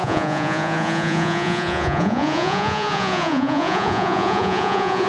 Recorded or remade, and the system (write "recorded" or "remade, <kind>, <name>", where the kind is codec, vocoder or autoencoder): remade, vocoder, Vocos